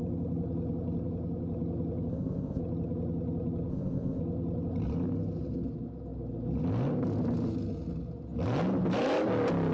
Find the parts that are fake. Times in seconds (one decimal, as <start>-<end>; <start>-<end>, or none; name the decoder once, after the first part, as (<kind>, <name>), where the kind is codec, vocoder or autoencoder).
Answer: 2.1-2.6 (codec, ZipCodec); 3.7-4.2